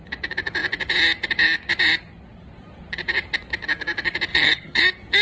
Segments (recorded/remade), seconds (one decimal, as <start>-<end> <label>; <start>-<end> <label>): 0.0-4.3 recorded; 4.3-4.8 remade; 4.8-5.2 recorded